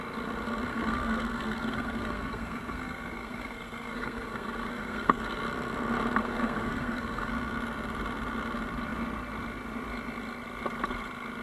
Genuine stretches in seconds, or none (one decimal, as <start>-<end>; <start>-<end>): 0.0-0.7; 5.4-6.2; 7.3-11.4